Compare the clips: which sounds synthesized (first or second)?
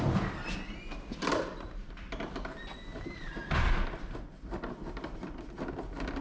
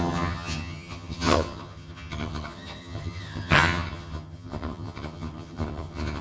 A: second